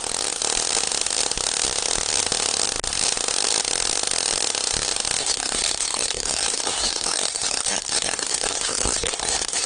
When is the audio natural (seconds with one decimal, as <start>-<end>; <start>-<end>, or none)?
0.0-5.2